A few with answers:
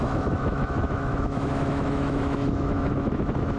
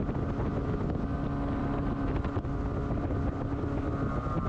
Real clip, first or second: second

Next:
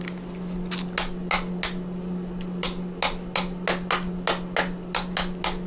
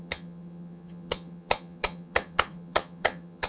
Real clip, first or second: first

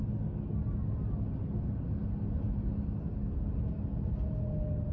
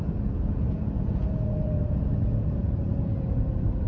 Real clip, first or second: first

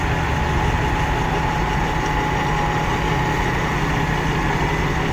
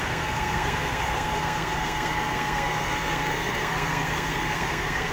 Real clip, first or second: first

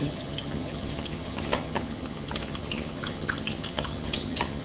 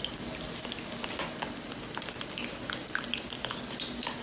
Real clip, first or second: second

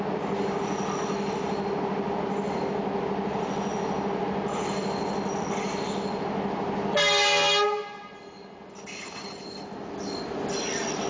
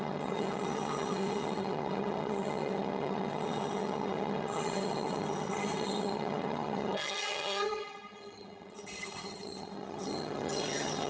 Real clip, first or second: first